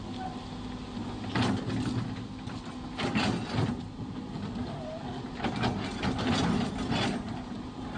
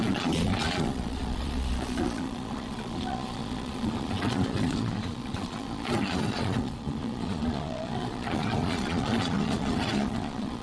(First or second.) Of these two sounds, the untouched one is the first